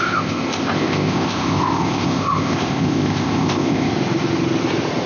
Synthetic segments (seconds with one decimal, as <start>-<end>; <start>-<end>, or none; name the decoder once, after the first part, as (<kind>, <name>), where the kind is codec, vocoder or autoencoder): 0.0-3.9 (codec, ZipCodec)